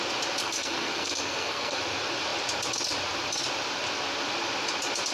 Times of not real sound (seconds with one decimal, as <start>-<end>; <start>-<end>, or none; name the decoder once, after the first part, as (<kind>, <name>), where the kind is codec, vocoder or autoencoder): 0.4-1.8 (codec, SNAC)